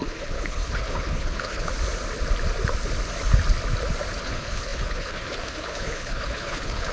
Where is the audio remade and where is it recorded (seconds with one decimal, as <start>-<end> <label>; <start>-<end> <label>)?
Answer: 0.0-1.7 remade; 1.7-4.2 recorded; 4.2-6.9 remade